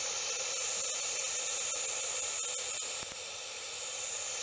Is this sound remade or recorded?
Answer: recorded